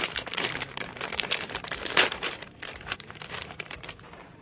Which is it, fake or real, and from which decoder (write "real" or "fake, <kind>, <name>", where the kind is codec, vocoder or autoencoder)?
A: fake, vocoder, BigVGAN v2